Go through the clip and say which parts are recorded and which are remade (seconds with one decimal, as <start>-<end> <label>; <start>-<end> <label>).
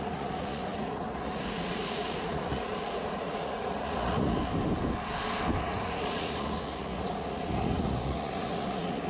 0.0-4.4 remade; 4.4-5.6 recorded; 5.6-9.1 remade